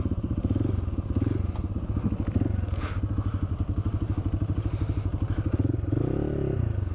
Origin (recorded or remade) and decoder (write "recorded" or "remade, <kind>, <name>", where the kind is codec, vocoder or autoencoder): recorded